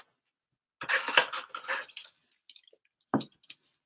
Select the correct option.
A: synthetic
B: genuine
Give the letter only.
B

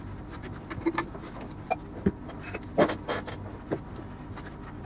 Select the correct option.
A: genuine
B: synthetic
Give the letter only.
A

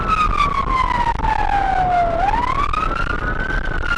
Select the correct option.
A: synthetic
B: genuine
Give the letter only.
B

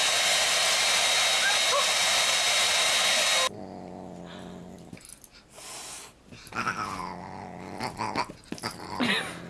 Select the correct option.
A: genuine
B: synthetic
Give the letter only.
A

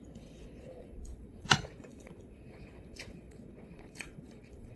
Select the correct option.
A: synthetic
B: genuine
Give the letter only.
A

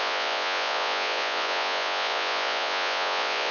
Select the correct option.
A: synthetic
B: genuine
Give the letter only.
A